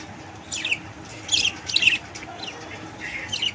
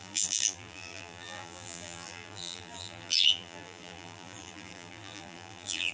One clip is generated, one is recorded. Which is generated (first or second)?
second